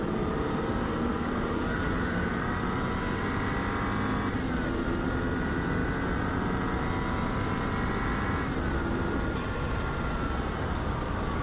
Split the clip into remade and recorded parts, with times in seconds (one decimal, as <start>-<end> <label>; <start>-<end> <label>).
0.0-1.1 recorded; 1.1-2.6 remade; 2.6-10.7 recorded; 10.7-11.4 remade